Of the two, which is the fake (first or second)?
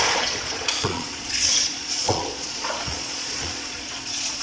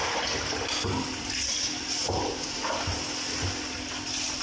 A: first